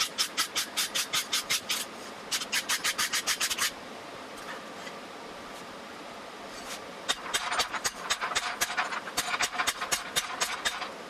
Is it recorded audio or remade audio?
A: recorded